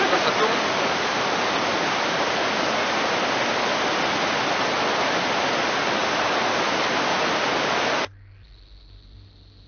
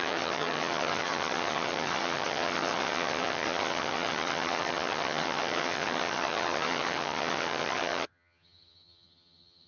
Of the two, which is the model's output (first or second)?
second